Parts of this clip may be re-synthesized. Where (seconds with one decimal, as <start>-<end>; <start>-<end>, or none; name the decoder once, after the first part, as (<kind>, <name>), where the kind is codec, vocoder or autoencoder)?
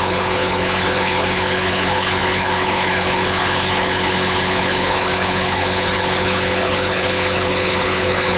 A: 0.0-8.4 (codec, HILCodec)